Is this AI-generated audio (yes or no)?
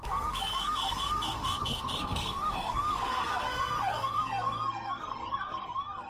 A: yes